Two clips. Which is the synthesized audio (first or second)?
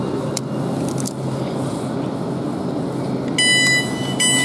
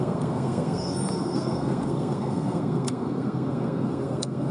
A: second